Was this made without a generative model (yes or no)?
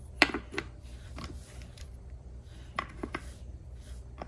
no